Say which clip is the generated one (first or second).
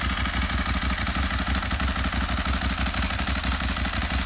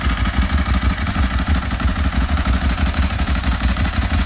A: second